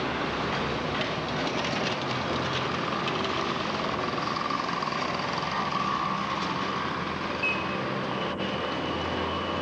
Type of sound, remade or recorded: recorded